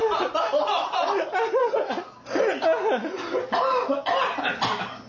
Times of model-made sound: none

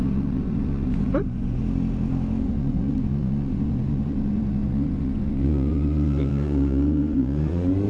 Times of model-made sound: 0.0-1.6 (vocoder, Vocos); 2.4-7.9

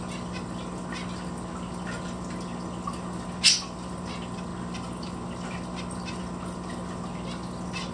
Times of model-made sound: none